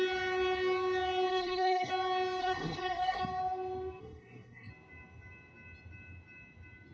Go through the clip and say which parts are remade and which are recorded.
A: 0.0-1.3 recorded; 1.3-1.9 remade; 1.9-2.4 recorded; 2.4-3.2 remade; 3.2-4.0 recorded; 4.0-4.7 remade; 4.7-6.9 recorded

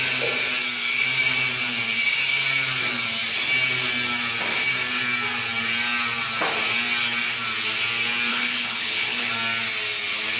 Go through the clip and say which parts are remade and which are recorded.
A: 0.0-8.3 recorded; 8.3-9.3 remade; 9.3-10.4 recorded